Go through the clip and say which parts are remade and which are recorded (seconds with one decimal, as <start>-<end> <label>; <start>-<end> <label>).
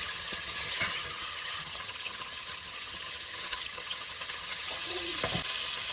0.0-5.1 remade; 5.1-5.9 recorded